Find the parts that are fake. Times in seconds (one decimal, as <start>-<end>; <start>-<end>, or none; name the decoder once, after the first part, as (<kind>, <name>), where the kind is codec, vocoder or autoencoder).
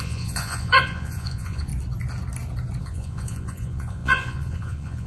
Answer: 0.0-1.7 (vocoder, Vocos); 2.8-5.1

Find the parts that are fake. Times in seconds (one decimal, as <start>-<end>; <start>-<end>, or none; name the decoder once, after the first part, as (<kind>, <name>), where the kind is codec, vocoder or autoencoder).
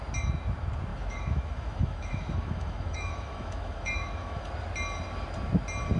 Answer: 0.9-4.5 (autoencoder, DAC-VAE)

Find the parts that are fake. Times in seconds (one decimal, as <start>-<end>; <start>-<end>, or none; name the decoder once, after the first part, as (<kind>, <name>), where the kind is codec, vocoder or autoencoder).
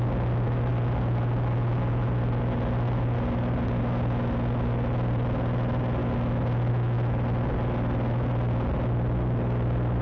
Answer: none